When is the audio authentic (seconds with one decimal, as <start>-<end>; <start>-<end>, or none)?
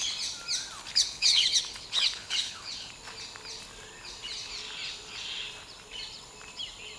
0.0-0.9; 2.9-7.0